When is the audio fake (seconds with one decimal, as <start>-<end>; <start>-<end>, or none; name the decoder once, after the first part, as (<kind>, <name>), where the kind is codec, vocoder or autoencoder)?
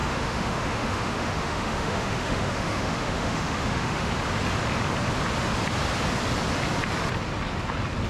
0.0-4.1 (autoencoder, DAC-VAE)